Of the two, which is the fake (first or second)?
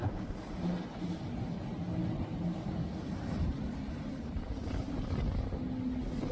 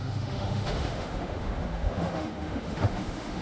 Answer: second